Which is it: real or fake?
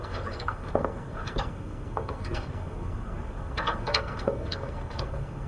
fake